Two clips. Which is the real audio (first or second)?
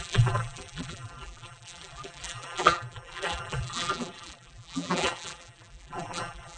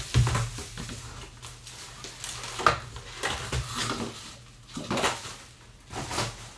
second